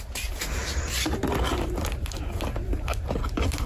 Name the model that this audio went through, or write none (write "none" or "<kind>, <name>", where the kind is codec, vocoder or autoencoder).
none